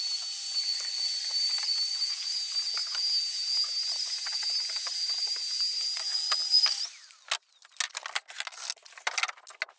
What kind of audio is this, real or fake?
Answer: real